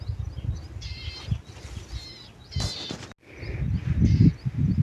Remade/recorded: recorded